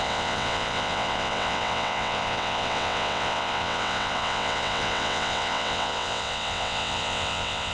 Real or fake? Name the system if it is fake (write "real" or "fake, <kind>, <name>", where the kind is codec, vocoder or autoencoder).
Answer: fake, vocoder, WaveNeXt